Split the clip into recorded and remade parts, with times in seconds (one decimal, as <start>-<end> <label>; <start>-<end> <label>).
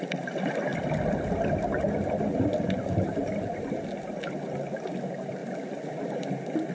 0.0-6.7 recorded